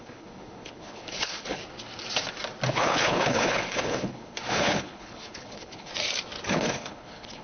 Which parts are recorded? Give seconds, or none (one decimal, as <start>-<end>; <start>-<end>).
1.6-2.7; 5.9-6.5